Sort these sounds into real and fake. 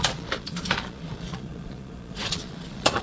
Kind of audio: fake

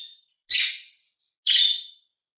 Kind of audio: real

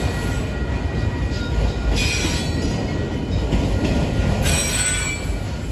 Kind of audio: real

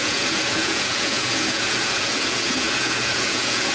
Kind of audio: fake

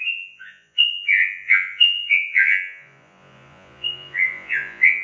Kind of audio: fake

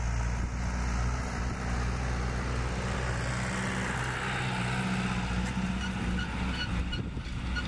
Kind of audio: real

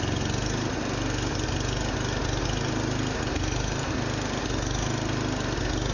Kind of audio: real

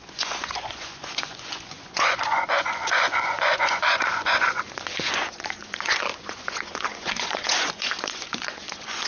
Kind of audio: fake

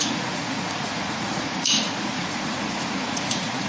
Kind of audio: fake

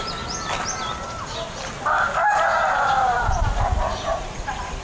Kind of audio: real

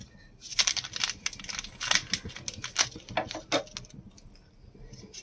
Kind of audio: real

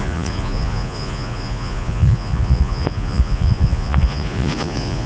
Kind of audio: fake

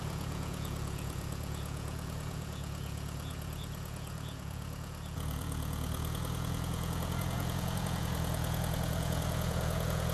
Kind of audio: fake